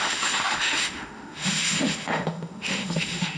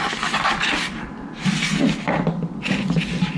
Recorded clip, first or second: second